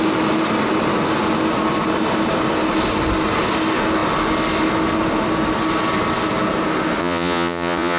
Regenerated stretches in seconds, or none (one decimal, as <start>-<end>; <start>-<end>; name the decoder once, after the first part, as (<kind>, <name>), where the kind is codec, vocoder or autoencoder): 7.0-8.0 (vocoder, Vocos)